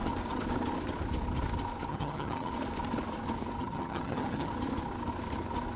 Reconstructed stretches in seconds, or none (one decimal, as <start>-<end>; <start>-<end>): 1.9-2.5; 3.6-4.5